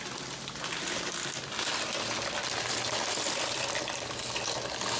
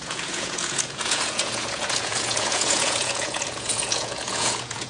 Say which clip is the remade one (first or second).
second